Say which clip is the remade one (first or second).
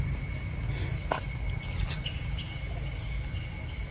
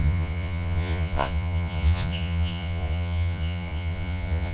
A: second